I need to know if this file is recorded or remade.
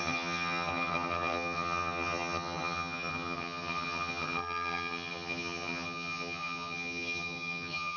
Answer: remade